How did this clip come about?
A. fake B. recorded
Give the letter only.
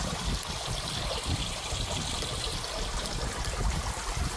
B